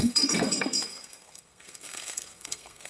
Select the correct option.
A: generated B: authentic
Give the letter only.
A